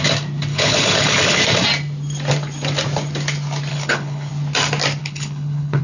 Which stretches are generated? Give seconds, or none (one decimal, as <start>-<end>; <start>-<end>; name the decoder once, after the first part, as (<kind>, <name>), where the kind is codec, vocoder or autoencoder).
0.5-1.4 (codec, HILCodec); 3.7-4.3; 5.0-5.8

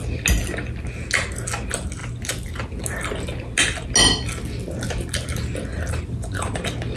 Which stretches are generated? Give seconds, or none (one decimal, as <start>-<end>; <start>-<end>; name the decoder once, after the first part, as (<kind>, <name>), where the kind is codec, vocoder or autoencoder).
none

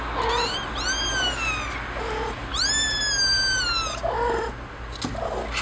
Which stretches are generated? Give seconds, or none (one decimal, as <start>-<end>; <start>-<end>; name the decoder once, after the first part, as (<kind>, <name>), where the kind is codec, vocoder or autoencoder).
none

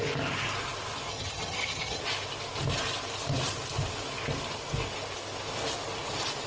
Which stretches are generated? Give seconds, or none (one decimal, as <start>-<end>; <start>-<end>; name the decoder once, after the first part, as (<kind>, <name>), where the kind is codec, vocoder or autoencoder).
1.1-2.0 (vocoder, HiFi-GAN)

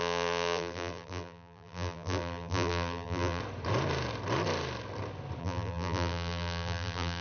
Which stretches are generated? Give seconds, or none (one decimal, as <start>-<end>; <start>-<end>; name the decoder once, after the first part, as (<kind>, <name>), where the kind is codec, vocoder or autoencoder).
0.0-3.4 (vocoder, BigVGAN v2); 5.4-7.2